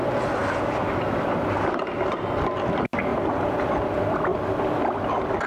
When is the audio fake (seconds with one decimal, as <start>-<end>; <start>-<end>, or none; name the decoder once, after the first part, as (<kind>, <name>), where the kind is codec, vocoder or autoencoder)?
none